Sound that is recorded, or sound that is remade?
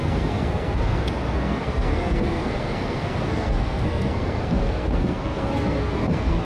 remade